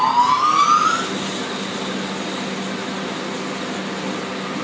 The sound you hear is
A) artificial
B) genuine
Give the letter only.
B